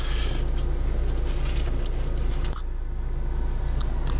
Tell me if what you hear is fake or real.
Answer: real